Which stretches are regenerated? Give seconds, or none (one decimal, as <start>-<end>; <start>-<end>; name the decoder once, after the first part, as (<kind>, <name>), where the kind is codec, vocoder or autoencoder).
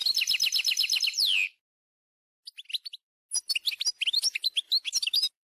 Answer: 0.0-1.0 (vocoder, BigVGAN v2)